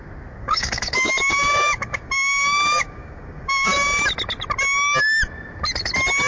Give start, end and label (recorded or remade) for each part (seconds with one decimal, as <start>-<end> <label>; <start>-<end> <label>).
0.0-0.4 recorded; 0.4-4.0 remade; 4.0-6.3 recorded